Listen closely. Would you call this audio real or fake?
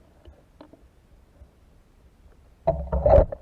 real